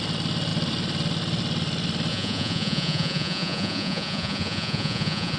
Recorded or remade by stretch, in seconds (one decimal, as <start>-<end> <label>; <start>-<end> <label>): 0.0-2.1 recorded; 2.1-5.4 remade